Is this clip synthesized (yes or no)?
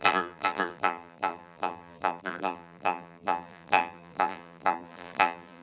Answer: yes